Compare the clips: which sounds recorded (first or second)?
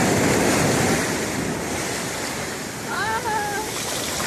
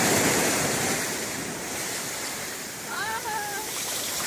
first